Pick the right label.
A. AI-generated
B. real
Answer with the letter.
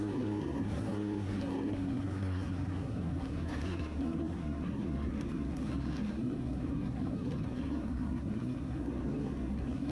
A